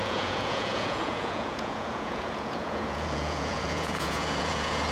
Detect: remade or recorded remade